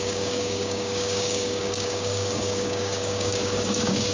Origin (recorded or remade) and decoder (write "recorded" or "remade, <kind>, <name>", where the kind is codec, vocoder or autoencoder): remade, codec, DAC